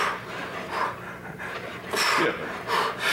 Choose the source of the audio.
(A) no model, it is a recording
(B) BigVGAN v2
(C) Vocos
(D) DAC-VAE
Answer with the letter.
A